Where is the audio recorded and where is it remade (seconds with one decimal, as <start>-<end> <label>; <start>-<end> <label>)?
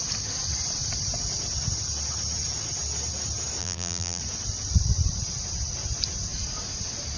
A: 0.0-3.6 recorded; 3.6-4.2 remade; 4.2-7.2 recorded